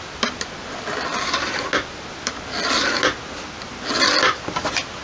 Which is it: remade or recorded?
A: recorded